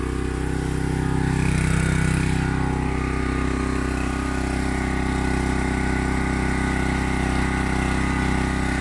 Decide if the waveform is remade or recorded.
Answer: recorded